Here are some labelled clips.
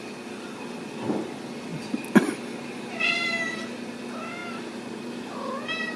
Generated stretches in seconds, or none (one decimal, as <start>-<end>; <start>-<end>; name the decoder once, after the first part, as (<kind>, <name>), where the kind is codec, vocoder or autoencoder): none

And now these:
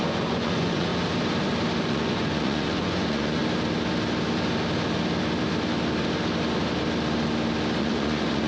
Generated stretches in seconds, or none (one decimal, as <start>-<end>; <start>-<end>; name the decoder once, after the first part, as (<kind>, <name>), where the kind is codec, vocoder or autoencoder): 0.0-0.9 (vocoder, Vocos); 1.8-3.4; 7.8-8.5

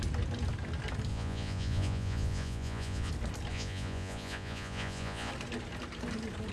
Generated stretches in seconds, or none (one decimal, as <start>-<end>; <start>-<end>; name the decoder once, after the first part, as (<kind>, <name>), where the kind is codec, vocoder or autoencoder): 1.1-3.1 (vocoder, Vocos); 3.5-5.3